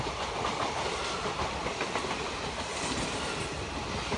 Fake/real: fake